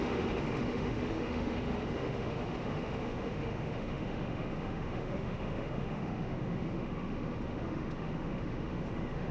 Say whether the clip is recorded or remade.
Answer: remade